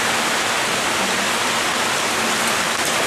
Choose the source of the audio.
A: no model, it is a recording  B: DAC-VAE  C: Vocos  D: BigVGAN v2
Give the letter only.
A